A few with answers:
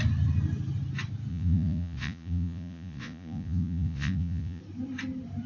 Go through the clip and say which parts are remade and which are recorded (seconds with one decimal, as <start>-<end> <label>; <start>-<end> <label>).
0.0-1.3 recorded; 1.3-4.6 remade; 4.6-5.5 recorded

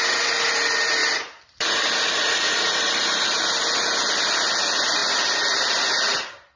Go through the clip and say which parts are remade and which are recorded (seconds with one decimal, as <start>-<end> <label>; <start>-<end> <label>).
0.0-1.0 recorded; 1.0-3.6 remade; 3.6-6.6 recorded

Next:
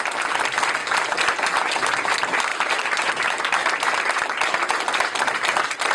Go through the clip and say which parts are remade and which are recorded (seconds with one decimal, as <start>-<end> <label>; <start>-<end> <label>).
0.0-2.5 recorded; 2.5-3.4 remade; 3.4-5.9 recorded

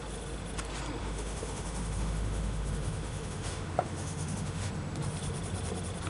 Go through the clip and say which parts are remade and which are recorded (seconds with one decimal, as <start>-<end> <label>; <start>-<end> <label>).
0.0-1.0 recorded; 1.0-4.7 remade; 4.7-6.1 recorded